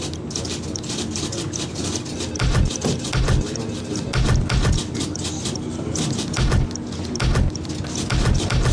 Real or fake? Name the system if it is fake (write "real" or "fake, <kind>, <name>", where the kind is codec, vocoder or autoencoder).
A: real